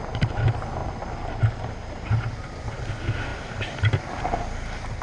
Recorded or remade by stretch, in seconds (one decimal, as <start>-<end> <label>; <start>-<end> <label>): 0.0-5.0 recorded

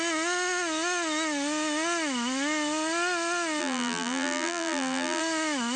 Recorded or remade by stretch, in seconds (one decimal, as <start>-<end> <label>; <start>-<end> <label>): 0.0-3.6 recorded; 3.6-5.2 remade; 5.2-5.8 recorded

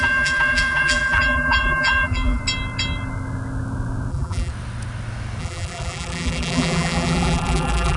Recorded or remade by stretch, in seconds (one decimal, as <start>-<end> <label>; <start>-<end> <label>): 0.0-2.4 remade; 2.4-4.1 recorded; 4.1-4.5 remade; 4.5-5.4 recorded; 5.4-8.0 remade